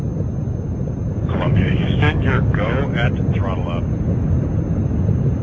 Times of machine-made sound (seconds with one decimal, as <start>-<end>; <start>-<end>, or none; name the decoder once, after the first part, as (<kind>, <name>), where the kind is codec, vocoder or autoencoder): 1.1-2.8 (codec, DAC)